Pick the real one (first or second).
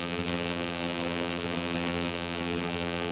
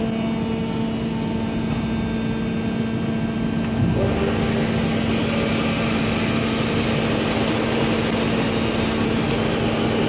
second